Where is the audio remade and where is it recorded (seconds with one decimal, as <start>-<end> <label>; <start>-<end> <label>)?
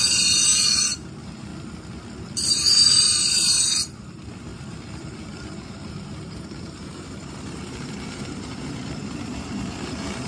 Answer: 0.0-1.5 remade; 1.5-2.5 recorded; 2.5-10.3 remade